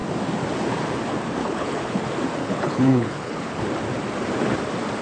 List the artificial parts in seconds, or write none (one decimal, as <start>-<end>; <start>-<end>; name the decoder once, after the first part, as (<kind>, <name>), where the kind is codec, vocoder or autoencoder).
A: 1.4-2.0 (codec, HILCodec); 2.4-3.6